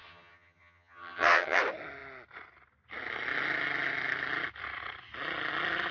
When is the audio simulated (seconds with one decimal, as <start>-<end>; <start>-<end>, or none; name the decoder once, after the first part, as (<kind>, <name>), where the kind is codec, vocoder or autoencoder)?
0.0-1.6 (vocoder, HiFi-GAN)